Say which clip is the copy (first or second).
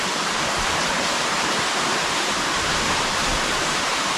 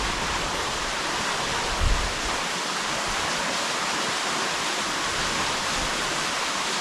first